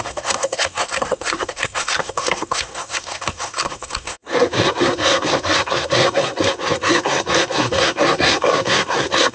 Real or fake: fake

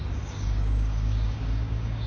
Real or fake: fake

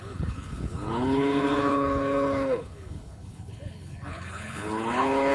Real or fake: fake